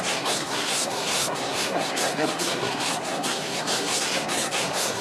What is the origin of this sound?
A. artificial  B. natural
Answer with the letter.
A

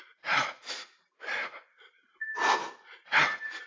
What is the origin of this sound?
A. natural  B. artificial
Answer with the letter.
A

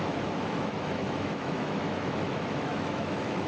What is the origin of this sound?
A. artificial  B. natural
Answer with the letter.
A